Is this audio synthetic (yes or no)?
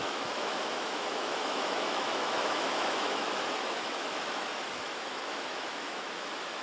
yes